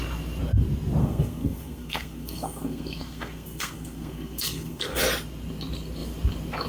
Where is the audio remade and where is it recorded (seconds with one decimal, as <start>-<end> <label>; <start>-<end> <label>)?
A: 0.0-1.0 recorded; 1.0-5.0 remade; 5.0-6.7 recorded